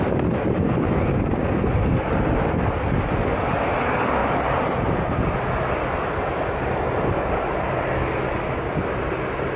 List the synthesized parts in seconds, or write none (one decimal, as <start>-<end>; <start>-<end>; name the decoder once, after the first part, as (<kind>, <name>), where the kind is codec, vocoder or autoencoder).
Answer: none